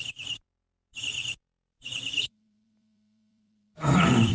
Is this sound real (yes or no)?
no